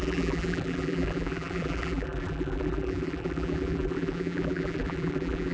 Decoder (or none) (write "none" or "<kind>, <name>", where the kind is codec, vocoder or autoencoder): vocoder, BigVGAN v2